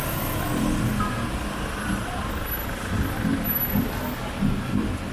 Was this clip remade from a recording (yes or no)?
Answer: no